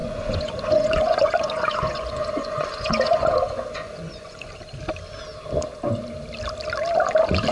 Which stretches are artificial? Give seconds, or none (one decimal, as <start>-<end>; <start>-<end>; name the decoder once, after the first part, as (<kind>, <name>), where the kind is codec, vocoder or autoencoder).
0.0-4.5 (vocoder, Vocos)